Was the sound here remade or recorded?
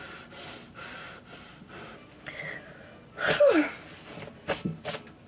recorded